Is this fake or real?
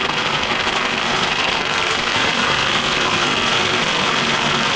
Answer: fake